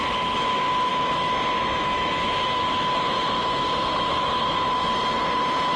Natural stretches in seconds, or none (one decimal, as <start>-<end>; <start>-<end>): 0.5-0.9; 4.4-5.8